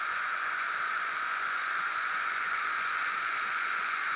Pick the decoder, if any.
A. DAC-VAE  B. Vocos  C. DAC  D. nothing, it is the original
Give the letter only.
B